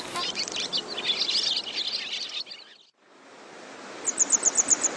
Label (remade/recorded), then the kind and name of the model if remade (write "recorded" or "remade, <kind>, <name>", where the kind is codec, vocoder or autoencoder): recorded